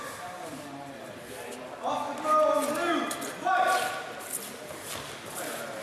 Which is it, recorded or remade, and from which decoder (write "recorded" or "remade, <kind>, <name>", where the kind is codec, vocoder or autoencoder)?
recorded